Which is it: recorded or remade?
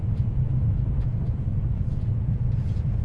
remade